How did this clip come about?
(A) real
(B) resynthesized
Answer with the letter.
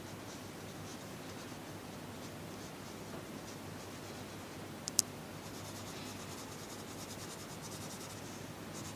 A